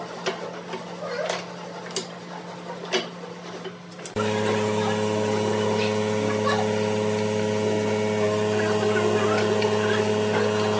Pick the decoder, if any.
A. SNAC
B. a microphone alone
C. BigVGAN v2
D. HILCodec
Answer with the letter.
B